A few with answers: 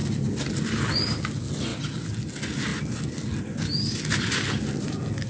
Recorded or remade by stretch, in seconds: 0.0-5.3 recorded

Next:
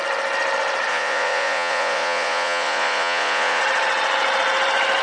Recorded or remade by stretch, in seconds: 0.0-0.9 recorded; 0.9-3.6 remade; 3.6-5.0 recorded

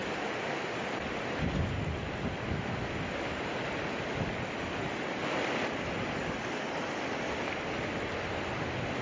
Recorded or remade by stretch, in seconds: 0.0-9.0 recorded

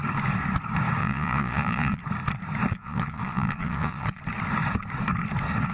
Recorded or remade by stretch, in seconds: 0.0-1.0 recorded; 1.0-2.0 remade; 2.0-2.7 recorded; 2.7-4.2 remade; 4.2-5.7 recorded

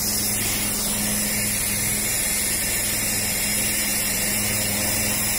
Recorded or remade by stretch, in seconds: 0.0-3.9 recorded; 3.9-5.0 remade; 5.0-5.4 recorded

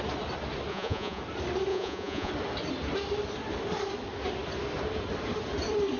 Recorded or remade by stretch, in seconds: 0.0-0.7 recorded; 0.7-1.2 remade; 1.2-1.7 recorded; 1.7-2.3 remade; 2.3-6.0 recorded